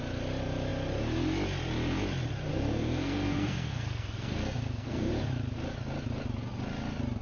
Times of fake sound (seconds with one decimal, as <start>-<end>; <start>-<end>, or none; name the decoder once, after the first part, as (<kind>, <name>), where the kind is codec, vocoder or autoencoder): 2.5-5.1 (codec, SNAC)